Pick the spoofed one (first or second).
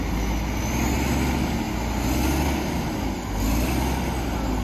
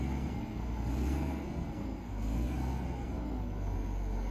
second